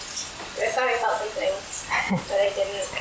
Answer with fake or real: real